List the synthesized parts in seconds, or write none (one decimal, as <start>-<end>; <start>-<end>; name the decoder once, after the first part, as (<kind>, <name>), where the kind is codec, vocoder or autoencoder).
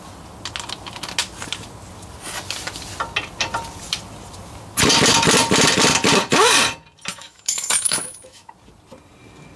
7.1-8.5 (autoencoder, DAC-VAE)